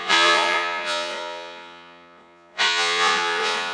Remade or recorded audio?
remade